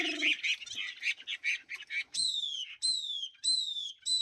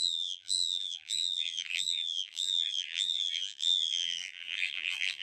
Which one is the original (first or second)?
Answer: first